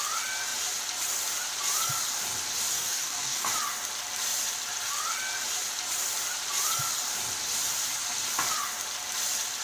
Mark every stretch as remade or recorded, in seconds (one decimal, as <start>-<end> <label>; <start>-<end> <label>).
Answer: 0.0-2.7 recorded; 2.7-3.5 remade; 3.5-9.6 recorded